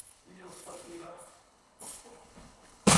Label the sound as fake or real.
fake